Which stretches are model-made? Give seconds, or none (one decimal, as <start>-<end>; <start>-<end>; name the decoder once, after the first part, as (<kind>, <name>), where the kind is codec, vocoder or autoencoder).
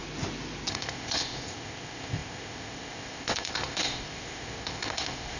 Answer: 0.7-5.4 (codec, ZipCodec)